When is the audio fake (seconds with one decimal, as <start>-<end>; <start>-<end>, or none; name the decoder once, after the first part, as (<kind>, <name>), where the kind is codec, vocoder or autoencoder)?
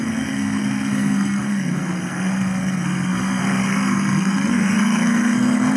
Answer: 0.0-5.8 (codec, SNAC)